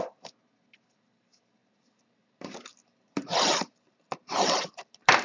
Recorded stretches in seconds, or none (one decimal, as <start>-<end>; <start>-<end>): 0.0-1.6; 4.7-5.2